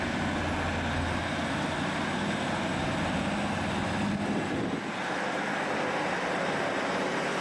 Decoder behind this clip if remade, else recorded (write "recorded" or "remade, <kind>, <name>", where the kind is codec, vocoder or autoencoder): recorded